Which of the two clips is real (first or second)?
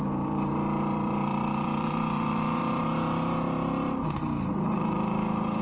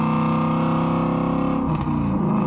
second